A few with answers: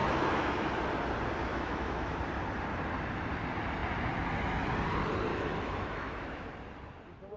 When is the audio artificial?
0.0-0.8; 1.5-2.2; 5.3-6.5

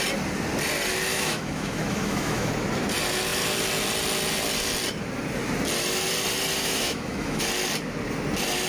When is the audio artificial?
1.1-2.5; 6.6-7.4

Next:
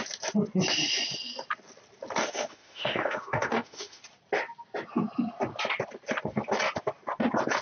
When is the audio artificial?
2.2-4.0

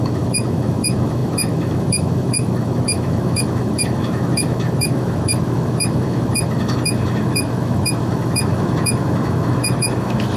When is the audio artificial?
0.0-10.4

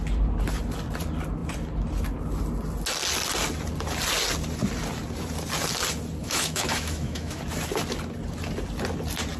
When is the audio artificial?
6.2-7.4

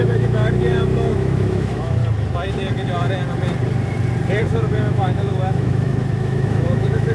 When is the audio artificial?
0.0-2.0; 4.4-7.1

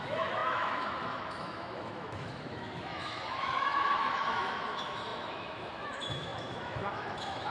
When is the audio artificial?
0.0-7.5